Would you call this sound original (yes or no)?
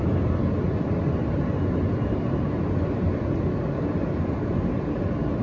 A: yes